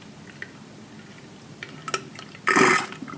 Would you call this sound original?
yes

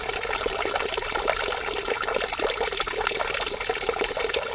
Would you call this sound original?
yes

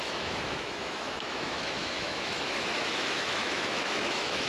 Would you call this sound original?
no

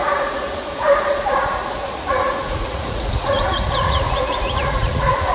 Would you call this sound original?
no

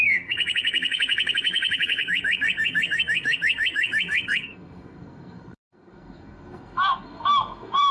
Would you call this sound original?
no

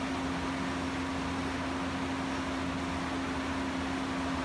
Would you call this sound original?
yes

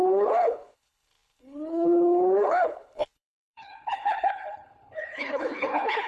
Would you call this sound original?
no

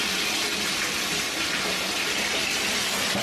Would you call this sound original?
yes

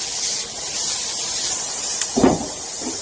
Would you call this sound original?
yes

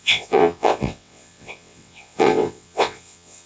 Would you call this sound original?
no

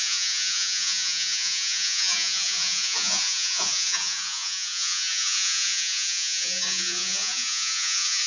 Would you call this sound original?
no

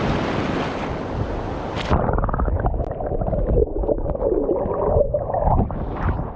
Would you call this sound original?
yes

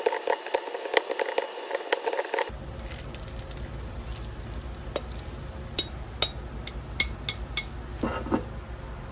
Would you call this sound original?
yes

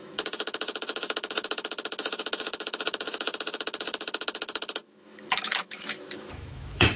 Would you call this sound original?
no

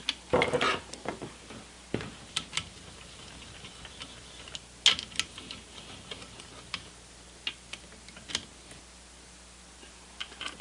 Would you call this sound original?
yes